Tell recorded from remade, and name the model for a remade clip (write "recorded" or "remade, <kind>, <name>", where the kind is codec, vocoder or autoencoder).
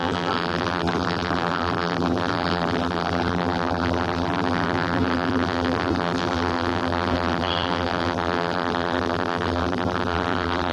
remade, vocoder, BigVGAN v2